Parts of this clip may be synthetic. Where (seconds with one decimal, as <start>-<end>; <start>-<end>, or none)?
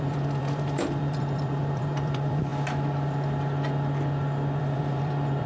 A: 0.0-2.5; 4.6-5.5